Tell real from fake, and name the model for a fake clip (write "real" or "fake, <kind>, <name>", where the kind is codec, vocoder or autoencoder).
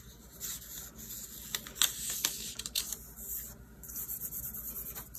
real